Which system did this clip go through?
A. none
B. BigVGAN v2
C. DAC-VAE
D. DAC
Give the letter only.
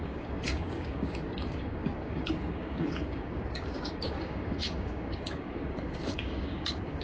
D